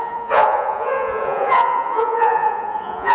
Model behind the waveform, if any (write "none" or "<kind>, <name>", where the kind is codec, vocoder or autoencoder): vocoder, Vocos